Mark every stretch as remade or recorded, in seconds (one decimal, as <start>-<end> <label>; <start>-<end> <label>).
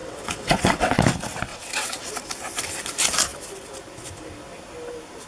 0.0-1.0 remade; 1.0-1.5 recorded; 1.5-2.1 remade; 2.1-5.3 recorded